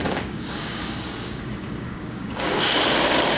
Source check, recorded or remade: remade